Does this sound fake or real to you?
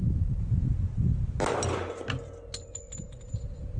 real